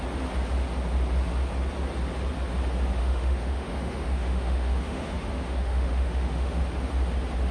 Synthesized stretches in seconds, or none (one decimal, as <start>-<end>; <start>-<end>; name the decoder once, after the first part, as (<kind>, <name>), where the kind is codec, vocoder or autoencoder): 3.0-6.6 (autoencoder, DAC-VAE)